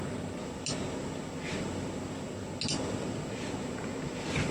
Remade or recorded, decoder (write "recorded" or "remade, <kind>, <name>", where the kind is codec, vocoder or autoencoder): recorded